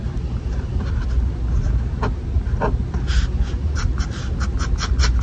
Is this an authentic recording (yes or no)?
yes